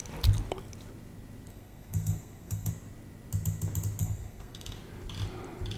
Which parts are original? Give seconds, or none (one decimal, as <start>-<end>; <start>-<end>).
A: 0.0-1.5; 2.7-4.0; 4.8-5.8